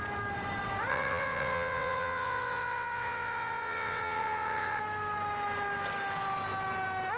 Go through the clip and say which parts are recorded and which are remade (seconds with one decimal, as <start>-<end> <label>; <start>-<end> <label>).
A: 0.0-0.9 recorded; 0.9-4.8 remade; 4.8-7.2 recorded